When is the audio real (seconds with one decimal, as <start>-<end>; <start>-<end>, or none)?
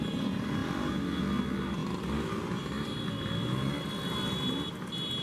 0.0-5.2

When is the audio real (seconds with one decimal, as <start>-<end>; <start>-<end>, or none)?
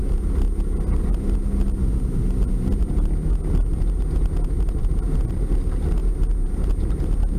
0.0-7.4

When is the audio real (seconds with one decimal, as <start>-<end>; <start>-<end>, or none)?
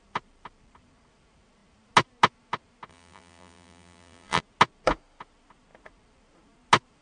0.0-2.9; 4.4-7.0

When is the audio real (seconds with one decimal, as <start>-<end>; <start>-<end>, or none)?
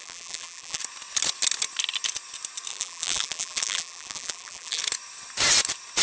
0.8-2.7; 4.8-6.0